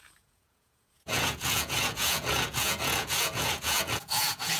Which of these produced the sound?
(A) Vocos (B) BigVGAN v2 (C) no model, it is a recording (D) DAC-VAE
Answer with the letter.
A